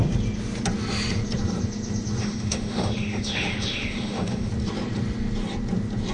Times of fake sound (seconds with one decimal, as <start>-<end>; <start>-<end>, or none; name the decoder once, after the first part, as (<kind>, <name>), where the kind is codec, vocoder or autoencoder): 2.2-4.5 (autoencoder, DAC-VAE)